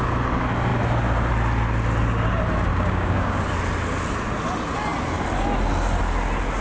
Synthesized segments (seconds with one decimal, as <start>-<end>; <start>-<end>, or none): 2.7-3.4